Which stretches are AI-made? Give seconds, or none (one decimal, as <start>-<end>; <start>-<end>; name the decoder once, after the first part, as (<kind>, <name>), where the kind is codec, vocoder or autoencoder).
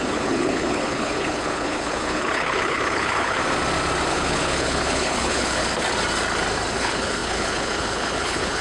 0.0-3.4 (codec, HILCodec); 4.1-5.6; 6.8-8.6